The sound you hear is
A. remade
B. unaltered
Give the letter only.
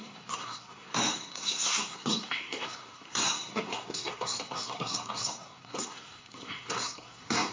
A